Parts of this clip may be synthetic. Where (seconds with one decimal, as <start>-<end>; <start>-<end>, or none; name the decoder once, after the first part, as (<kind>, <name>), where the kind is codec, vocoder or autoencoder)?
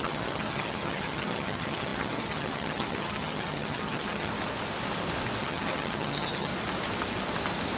0.0-4.3 (vocoder, HiFi-GAN); 5.4-6.5